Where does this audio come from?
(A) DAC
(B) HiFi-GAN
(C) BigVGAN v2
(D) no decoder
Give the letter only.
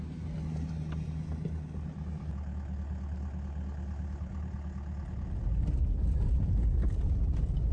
D